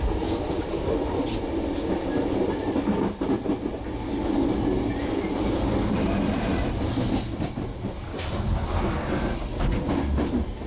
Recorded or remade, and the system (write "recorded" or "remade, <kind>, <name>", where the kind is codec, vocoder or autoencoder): recorded